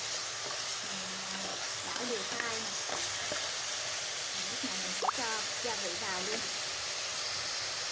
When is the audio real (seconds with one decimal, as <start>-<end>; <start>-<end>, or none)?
0.0-1.5; 2.1-7.9